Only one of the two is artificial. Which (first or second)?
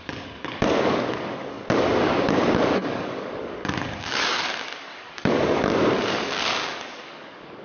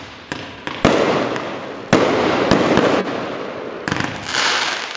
first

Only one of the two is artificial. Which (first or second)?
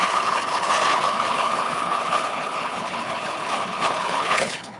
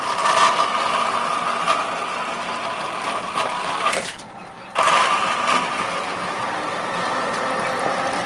first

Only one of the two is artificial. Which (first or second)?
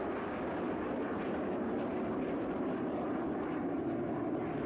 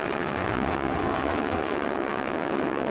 second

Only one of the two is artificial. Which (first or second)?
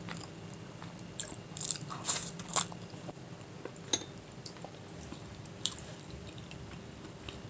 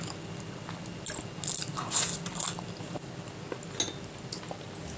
first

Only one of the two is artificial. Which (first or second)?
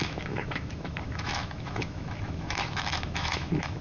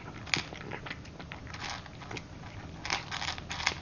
first